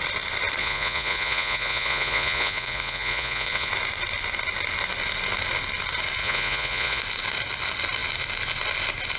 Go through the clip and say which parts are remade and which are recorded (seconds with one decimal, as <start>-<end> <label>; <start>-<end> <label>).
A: 0.0-0.6 recorded; 0.6-3.7 remade; 3.7-6.2 recorded; 6.2-7.0 remade; 7.0-9.2 recorded